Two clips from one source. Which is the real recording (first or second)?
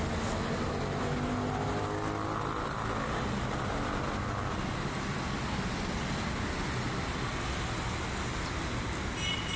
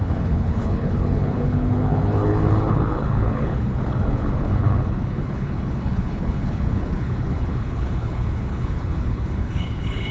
first